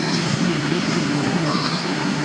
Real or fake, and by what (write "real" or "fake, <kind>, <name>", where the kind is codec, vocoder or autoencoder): fake, codec, SNAC